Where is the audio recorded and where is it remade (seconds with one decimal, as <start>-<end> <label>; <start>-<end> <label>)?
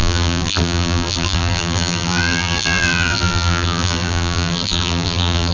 0.0-5.5 remade